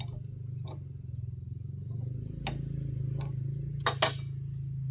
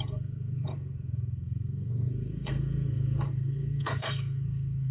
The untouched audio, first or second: first